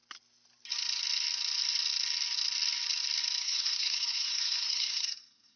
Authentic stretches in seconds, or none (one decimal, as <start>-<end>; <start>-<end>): 0.0-3.4